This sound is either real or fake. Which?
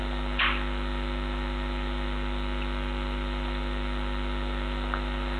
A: real